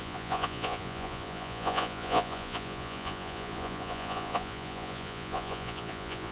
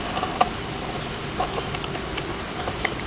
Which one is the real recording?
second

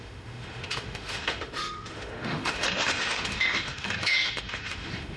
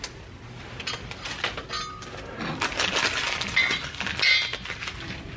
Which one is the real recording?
second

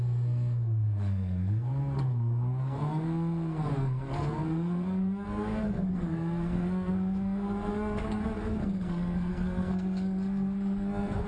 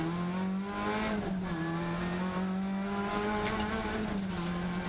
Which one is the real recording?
second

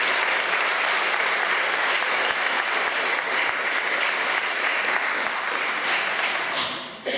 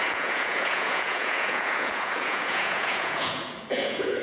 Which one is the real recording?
first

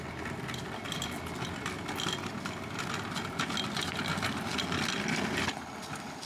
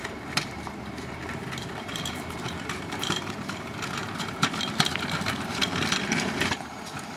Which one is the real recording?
first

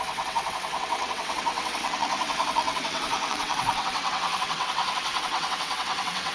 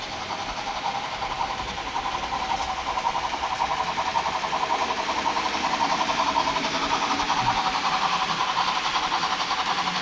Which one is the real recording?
second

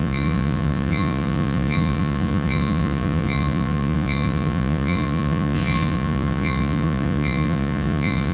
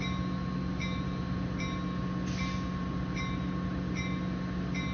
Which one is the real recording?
second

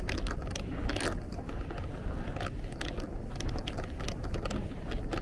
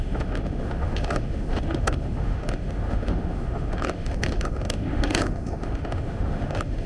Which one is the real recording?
first